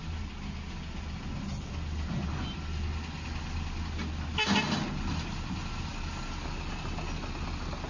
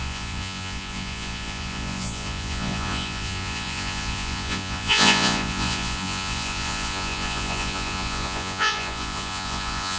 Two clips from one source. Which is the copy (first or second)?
second